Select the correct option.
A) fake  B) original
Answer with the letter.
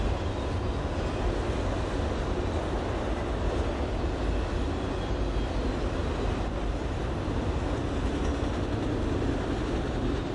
B